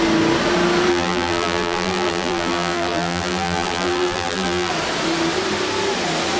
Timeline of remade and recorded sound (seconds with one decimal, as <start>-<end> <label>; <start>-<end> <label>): 0.0-0.9 recorded; 0.9-4.7 remade; 4.7-6.4 recorded